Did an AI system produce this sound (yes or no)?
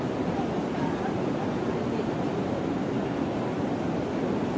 no